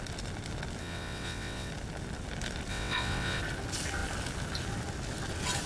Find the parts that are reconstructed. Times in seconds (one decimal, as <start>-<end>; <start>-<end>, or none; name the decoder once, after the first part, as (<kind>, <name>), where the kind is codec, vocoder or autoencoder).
0.8-1.7 (vocoder, WaveNeXt); 2.7-3.4